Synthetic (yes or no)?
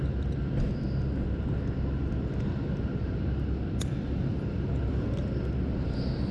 no